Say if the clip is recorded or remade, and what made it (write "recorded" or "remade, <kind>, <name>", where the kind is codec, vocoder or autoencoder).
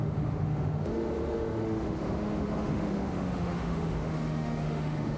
remade, autoencoder, DAC-VAE